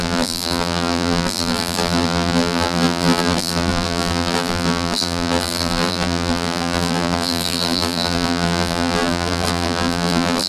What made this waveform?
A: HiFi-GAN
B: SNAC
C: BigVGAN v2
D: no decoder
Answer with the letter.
C